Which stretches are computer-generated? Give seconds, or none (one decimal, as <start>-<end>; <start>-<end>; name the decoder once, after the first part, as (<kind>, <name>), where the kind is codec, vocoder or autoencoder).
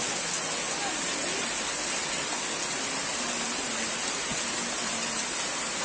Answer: none